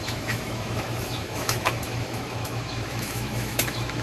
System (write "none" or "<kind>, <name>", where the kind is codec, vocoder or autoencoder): autoencoder, DAC-VAE